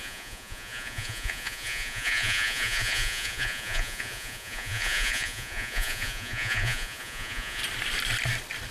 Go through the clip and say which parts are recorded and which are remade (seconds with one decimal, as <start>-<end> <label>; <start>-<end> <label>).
0.0-7.6 remade; 7.6-8.7 recorded